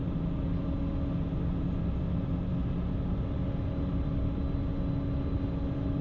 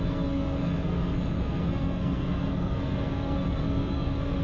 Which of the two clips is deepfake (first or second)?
second